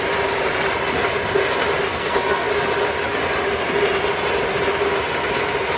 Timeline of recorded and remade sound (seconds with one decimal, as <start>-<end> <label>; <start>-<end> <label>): 0.0-1.9 recorded; 1.9-2.5 remade; 2.5-5.8 recorded